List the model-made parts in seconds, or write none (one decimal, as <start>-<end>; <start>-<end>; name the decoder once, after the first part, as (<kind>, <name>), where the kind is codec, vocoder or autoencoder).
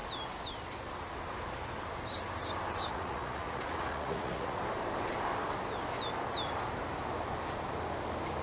2.9-4.6 (vocoder, Vocos)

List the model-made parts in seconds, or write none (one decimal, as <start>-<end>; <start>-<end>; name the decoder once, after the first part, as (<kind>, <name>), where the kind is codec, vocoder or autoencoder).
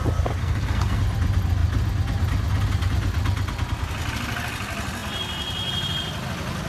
0.4-1.0 (codec, SNAC)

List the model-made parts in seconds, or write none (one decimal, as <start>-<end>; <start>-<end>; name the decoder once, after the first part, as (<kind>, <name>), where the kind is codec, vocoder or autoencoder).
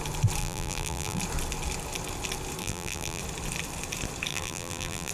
0.4-1.2 (vocoder, BigVGAN v2); 2.6-3.2; 4.3-5.1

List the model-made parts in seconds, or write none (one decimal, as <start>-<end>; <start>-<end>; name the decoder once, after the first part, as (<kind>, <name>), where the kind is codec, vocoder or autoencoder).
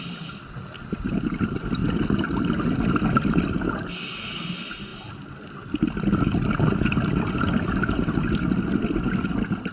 none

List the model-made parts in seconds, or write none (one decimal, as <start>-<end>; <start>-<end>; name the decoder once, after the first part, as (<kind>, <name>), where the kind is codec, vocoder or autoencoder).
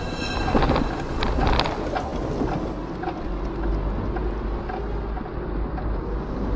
none